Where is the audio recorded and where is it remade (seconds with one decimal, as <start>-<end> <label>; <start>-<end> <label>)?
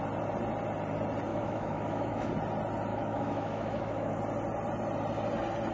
0.0-1.3 recorded; 1.3-2.3 remade; 2.3-2.9 recorded; 2.9-4.2 remade; 4.2-5.7 recorded